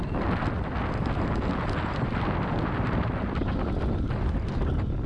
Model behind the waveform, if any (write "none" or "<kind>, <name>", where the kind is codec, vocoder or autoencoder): none